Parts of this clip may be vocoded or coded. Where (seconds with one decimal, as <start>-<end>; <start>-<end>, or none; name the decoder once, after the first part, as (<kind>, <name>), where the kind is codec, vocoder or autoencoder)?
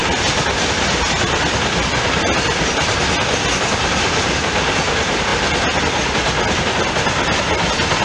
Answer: none